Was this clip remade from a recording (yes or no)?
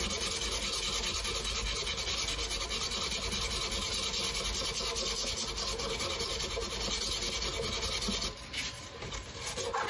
no